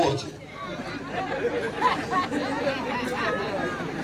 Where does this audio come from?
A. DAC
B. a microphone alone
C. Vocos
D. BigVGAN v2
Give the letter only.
B